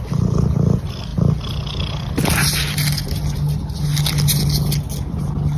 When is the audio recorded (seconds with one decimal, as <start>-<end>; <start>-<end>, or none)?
0.0-5.6